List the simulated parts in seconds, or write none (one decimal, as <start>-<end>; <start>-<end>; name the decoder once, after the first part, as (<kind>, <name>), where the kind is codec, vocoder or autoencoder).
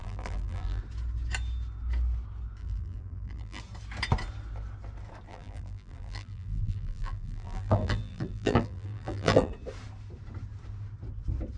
0.0-0.8 (vocoder, BigVGAN v2); 2.6-3.6; 5.3-9.5